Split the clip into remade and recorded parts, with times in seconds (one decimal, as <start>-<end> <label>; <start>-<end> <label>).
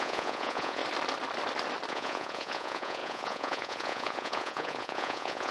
0.0-0.8 remade; 0.8-1.9 recorded; 1.9-5.5 remade